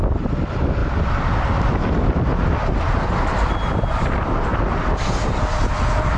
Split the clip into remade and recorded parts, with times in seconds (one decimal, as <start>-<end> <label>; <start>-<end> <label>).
0.0-6.2 recorded